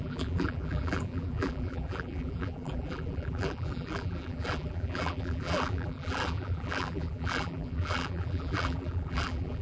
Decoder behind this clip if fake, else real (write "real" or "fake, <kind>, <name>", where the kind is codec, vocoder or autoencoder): fake, vocoder, BigVGAN v2